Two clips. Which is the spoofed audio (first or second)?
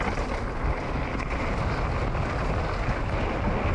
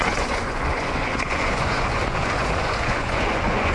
second